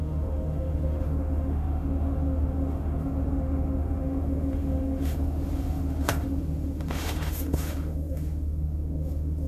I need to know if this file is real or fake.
fake